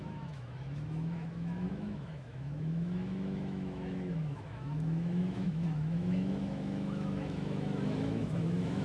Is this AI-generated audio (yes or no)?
yes